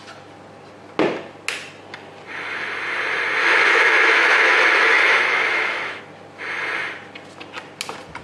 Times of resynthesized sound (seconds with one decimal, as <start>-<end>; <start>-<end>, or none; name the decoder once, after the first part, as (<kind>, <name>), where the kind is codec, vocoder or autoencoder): 3.4-6.0 (autoencoder, DAC-VAE)